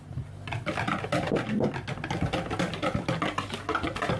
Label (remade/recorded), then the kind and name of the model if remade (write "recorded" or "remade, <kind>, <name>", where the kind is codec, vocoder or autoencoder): recorded